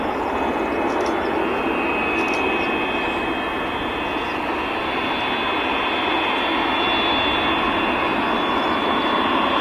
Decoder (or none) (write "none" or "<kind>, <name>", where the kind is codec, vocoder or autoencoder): none